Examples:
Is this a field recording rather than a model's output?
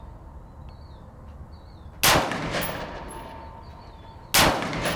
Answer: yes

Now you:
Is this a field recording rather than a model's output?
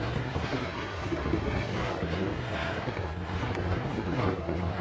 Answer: no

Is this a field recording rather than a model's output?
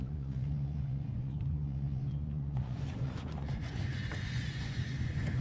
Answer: no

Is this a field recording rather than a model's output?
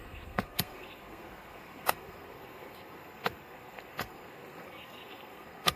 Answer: no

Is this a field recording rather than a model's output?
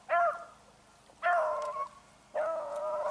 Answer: yes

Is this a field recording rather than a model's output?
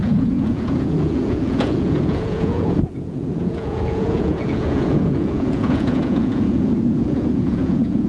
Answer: no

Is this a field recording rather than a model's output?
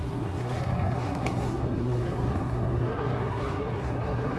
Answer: no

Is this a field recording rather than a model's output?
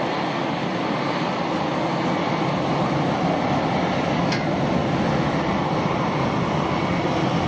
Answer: yes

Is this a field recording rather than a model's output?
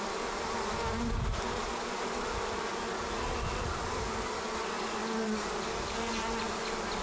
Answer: yes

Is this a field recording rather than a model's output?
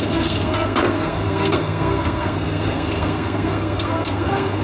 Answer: no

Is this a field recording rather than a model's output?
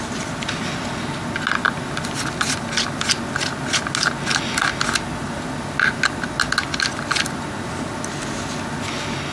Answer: yes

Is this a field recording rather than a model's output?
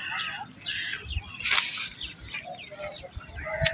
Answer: yes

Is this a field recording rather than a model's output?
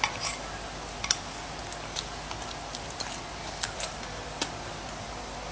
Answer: yes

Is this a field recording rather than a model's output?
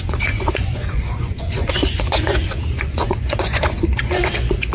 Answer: no